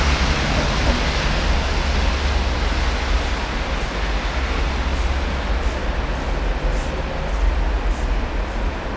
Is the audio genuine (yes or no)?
yes